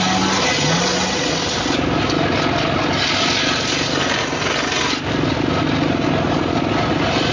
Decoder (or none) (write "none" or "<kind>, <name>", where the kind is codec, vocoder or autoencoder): none